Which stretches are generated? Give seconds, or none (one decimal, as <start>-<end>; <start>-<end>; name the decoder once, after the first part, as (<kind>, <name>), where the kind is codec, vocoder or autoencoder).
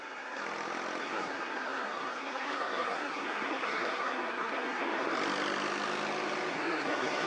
0.0-0.4 (codec, SNAC); 1.0-5.1; 6.5-7.3